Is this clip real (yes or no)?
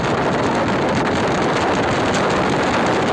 yes